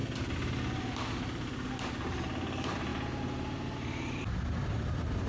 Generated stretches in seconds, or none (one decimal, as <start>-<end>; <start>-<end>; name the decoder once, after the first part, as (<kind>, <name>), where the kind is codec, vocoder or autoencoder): none